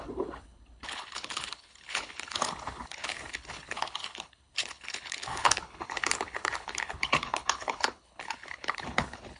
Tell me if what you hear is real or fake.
fake